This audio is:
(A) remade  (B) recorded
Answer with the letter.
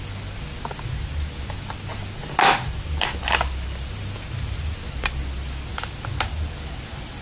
B